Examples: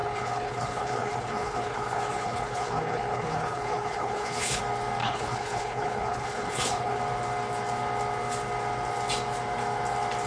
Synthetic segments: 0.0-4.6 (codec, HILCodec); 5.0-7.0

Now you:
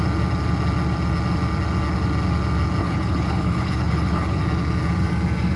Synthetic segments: 2.8-4.4 (codec, HILCodec)